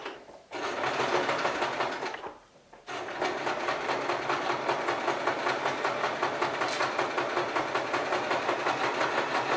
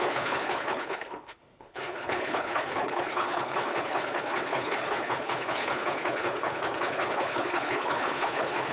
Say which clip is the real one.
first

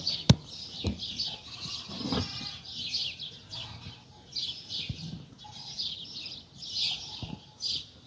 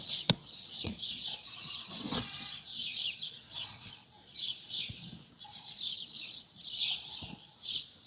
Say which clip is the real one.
first